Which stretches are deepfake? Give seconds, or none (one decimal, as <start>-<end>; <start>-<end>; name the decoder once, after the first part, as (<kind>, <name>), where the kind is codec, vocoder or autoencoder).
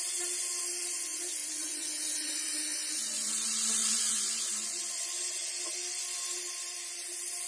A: 1.4-3.3 (vocoder, Vocos); 3.8-5.2